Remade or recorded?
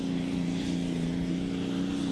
recorded